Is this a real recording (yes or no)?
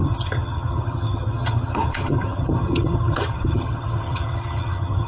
no